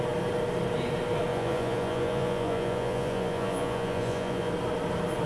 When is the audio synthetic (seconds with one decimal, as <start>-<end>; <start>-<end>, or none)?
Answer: 1.3-4.5